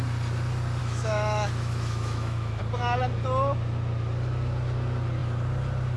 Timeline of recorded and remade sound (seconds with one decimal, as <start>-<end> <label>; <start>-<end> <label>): 0.0-0.8 recorded; 0.8-2.6 remade; 2.6-6.0 recorded